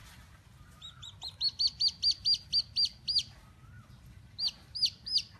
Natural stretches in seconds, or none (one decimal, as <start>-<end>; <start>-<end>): 0.0-5.4